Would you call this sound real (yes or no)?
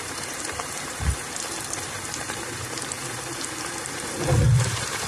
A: no